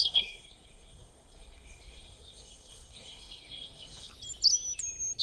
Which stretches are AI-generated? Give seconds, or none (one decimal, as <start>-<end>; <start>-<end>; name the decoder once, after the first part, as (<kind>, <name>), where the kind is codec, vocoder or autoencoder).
0.0-4.1 (codec, SNAC)